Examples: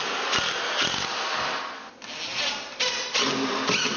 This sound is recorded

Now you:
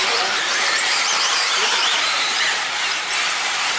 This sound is remade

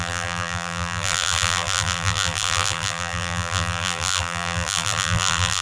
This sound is remade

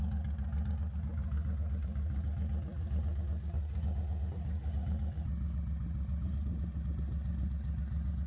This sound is recorded